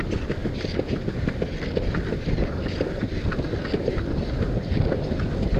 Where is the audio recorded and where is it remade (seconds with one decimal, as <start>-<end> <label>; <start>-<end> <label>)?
0.0-0.4 recorded; 0.4-3.1 remade; 3.1-5.6 recorded